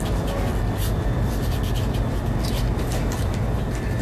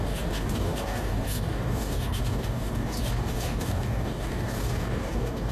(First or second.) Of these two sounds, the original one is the first